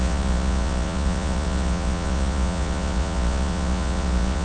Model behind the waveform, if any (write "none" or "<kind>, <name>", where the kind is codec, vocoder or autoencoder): vocoder, Vocos